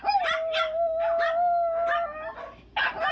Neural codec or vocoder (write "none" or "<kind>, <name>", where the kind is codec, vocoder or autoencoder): none